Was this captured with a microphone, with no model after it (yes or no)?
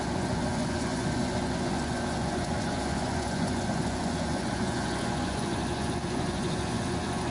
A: no